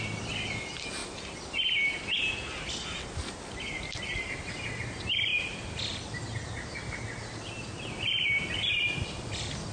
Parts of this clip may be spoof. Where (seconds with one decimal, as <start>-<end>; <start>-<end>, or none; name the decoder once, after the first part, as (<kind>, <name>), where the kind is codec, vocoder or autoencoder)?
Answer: none